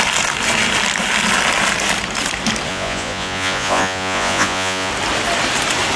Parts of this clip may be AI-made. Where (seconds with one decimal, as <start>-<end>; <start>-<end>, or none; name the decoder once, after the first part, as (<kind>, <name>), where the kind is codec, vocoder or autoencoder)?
2.7-4.9 (vocoder, Vocos)